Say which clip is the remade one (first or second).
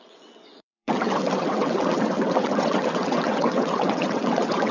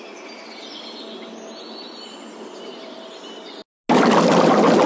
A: first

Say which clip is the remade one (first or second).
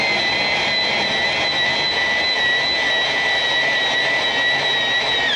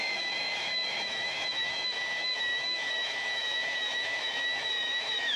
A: second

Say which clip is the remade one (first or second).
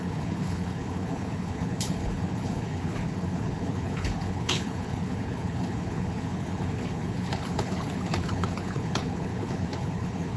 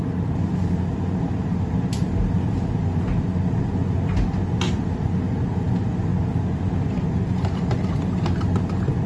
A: first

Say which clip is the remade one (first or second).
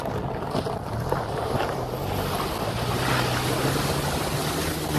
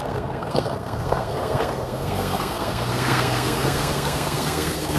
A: second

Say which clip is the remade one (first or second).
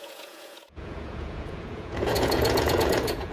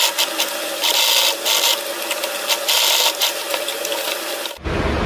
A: first